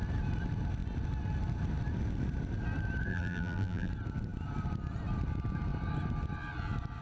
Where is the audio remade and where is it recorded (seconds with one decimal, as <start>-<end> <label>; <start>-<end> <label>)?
0.0-3.1 recorded; 3.1-3.9 remade; 3.9-7.0 recorded